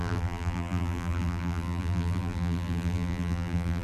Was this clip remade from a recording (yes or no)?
yes